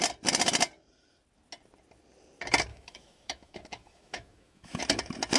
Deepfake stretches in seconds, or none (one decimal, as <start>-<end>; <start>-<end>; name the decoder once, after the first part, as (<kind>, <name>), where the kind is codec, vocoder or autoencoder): 2.7-4.8 (autoencoder, DAC-VAE)